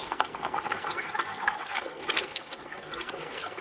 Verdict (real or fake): fake